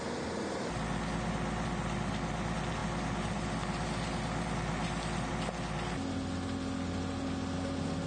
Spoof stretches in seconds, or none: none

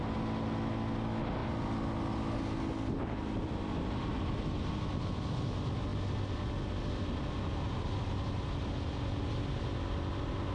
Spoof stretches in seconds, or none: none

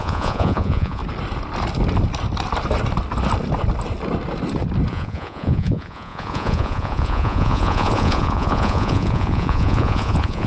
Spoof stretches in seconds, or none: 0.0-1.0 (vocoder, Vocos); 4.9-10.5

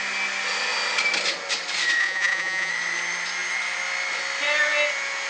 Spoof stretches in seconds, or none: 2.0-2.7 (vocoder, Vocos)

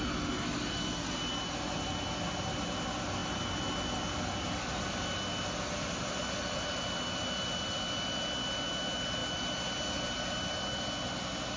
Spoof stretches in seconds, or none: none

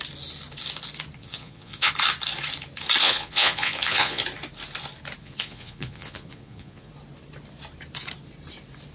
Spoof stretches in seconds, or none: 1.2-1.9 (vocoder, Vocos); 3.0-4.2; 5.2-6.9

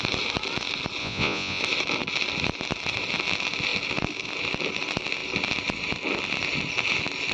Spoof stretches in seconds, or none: 1.0-1.6 (vocoder, Vocos)

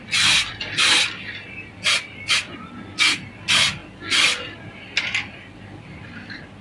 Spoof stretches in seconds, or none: none